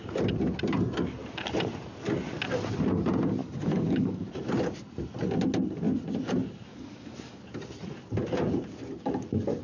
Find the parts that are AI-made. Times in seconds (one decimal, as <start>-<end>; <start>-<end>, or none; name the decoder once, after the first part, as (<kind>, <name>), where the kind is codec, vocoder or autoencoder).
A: 3.4-4.3 (codec, DAC); 6.7-7.4